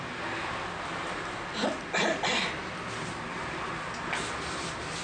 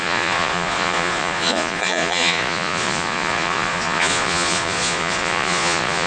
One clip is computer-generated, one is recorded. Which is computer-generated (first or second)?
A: second